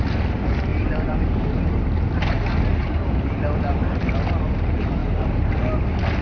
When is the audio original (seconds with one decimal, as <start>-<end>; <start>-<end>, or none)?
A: 0.0-0.7; 1.9-6.2